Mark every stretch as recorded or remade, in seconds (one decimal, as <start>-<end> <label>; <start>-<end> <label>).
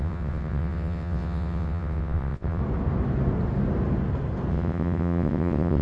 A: 0.0-2.6 remade; 2.6-4.5 recorded; 4.5-5.8 remade